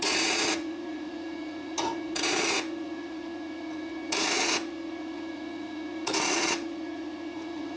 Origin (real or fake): fake